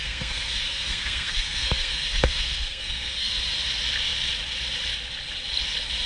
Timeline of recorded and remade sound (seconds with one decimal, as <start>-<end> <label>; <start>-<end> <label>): 0.0-3.3 remade; 3.3-6.1 recorded